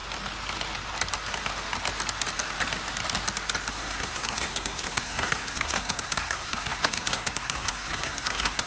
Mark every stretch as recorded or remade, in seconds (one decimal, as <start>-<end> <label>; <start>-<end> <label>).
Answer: 0.0-3.7 recorded; 3.7-8.7 remade

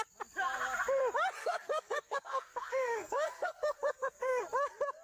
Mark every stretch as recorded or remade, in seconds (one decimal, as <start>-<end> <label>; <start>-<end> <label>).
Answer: 0.0-1.4 recorded; 1.4-4.4 remade; 4.4-5.0 recorded